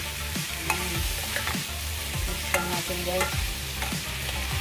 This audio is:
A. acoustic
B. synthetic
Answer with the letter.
B